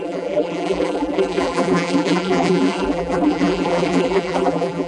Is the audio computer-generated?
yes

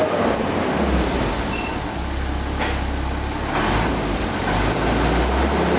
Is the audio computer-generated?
no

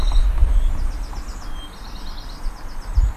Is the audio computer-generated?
no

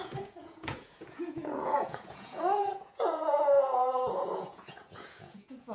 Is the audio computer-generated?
yes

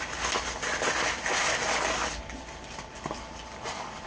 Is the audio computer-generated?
no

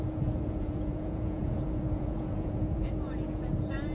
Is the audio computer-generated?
yes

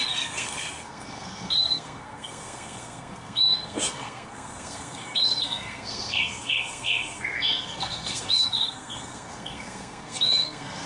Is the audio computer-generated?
yes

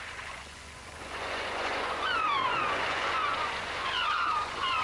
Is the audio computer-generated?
yes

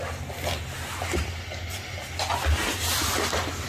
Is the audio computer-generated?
no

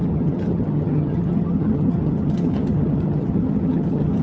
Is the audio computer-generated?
yes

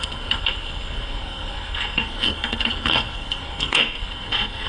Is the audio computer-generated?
yes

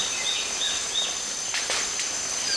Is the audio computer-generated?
no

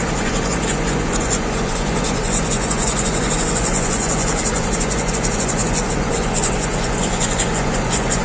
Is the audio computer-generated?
yes